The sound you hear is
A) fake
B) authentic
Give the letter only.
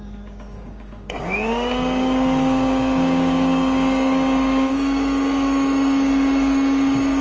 A